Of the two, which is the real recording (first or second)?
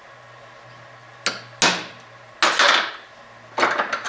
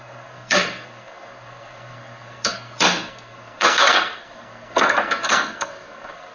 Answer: first